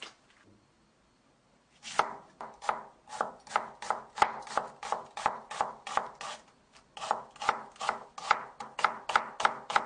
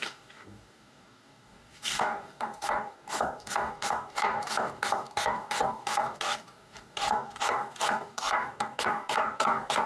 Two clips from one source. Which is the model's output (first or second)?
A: second